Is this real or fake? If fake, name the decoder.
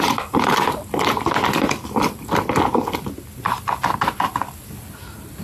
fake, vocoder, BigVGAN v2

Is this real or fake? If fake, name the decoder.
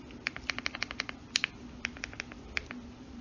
fake, vocoder, BigVGAN v2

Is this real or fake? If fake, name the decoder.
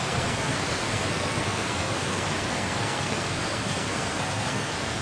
fake, codec, SNAC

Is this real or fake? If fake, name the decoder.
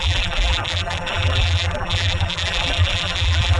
fake, vocoder, BigVGAN v2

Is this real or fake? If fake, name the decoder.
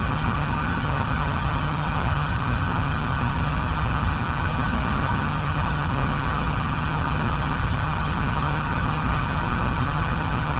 fake, vocoder, HiFi-GAN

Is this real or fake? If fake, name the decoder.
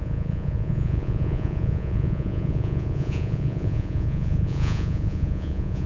fake, vocoder, Vocos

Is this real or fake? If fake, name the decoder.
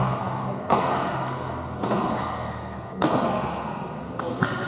fake, codec, SNAC